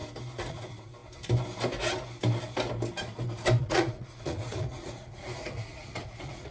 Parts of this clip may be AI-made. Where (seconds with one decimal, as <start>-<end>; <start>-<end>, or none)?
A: 0.5-1.0; 3.6-6.5